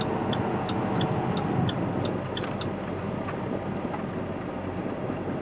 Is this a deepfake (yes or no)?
no